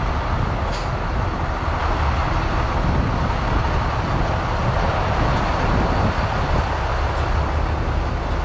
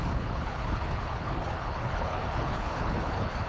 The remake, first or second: second